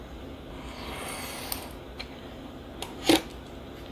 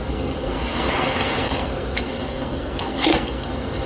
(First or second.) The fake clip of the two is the second